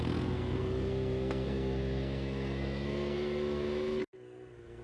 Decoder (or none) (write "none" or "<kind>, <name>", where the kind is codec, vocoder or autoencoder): codec, SNAC